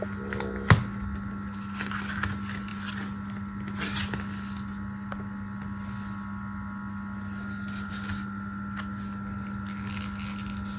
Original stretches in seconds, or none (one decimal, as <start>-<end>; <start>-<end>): 0.0-10.8